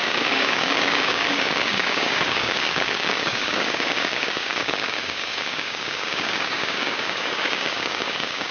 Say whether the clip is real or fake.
fake